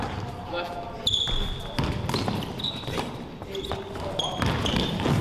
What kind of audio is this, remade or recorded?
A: recorded